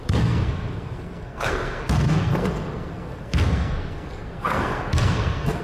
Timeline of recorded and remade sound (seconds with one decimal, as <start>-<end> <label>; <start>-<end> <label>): 0.0-5.6 remade

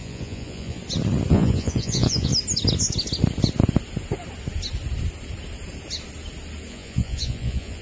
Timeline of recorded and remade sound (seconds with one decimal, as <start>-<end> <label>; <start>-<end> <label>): 0.0-0.8 remade; 0.8-1.3 recorded; 1.3-2.3 remade; 2.3-6.7 recorded; 6.7-7.8 remade